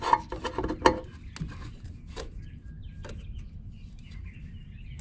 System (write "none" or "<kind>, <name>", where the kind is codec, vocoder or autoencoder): none